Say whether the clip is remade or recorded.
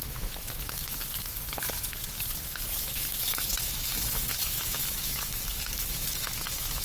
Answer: remade